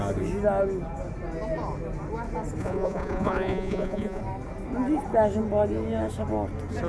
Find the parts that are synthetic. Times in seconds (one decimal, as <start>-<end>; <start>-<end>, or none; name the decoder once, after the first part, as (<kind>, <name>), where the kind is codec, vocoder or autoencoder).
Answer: 2.6-4.2 (vocoder, Vocos)